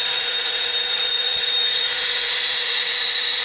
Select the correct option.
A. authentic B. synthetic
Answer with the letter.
B